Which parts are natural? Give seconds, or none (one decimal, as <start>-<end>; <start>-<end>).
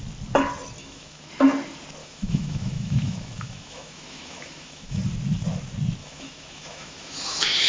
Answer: 0.0-0.8; 1.3-2.0; 5.0-6.0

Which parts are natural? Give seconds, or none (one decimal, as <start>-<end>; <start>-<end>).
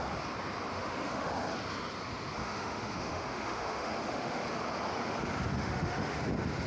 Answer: 0.0-0.7; 1.3-2.4; 4.4-5.5; 6.2-6.7